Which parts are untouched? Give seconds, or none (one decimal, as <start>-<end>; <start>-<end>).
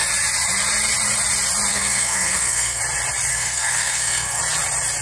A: 0.0-1.7; 2.8-3.3; 4.4-5.0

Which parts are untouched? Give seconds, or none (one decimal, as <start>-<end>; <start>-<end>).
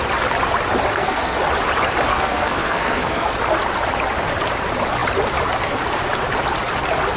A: 0.0-0.9; 1.4-2.1; 3.3-7.2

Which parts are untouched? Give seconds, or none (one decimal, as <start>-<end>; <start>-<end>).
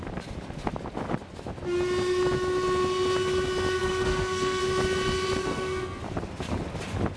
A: 0.0-3.8; 4.6-5.4; 6.0-7.2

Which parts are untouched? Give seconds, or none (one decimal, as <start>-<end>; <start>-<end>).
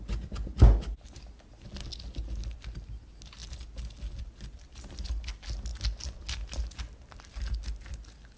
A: 0.0-8.4